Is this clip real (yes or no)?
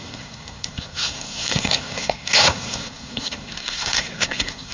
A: no